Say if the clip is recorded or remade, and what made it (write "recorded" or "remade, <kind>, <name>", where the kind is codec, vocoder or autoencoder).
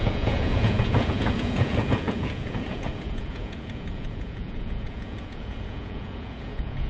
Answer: remade, vocoder, Vocos